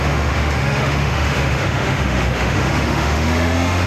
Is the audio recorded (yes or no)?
no